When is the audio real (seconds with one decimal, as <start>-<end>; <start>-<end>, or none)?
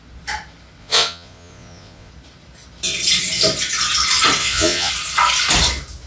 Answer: 0.0-0.8; 2.1-4.4; 4.9-6.1